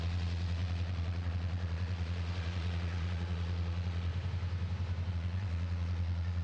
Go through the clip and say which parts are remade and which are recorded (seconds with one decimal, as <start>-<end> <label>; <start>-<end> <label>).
0.0-4.1 remade; 4.1-5.1 recorded; 5.1-6.4 remade